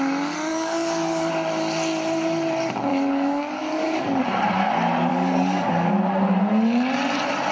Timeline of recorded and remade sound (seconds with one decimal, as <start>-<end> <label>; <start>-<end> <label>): 0.0-0.5 recorded; 0.5-1.3 remade; 1.3-2.9 recorded; 2.9-4.2 remade; 4.2-5.1 recorded; 5.1-5.9 remade; 5.9-7.5 recorded